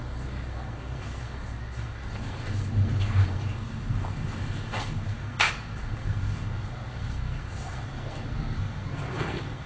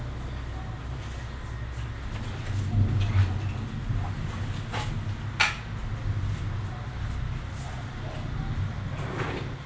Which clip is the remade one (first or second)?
first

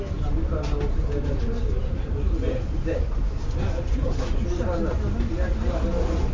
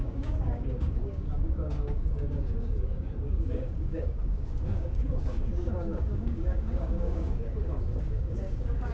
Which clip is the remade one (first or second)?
second